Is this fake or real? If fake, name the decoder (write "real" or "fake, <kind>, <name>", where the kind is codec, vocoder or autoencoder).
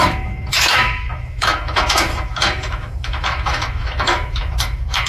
fake, autoencoder, DAC-VAE